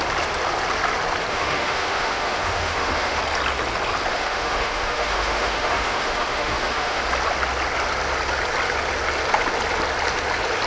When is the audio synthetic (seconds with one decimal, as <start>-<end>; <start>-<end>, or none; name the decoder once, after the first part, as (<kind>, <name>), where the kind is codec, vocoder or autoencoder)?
1.3-3.2 (autoencoder, DAC-VAE); 4.1-7.0